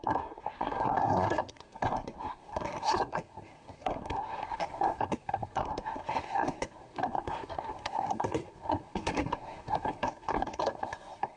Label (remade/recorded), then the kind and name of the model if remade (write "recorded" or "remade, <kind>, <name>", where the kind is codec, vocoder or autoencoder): remade, codec, SNAC